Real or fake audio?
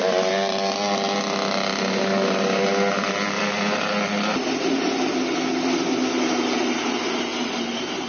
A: real